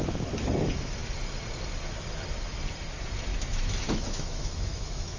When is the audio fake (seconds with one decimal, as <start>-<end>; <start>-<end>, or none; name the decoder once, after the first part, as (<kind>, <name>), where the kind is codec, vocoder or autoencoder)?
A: 3.3-5.2 (autoencoder, DAC-VAE)